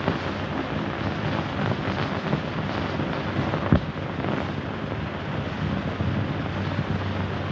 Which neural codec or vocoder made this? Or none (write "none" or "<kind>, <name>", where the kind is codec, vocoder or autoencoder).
none